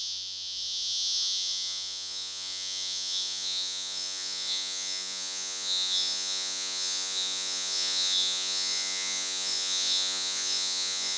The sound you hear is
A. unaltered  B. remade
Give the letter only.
B